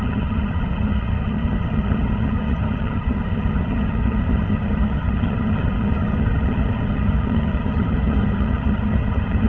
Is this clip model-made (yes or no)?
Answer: yes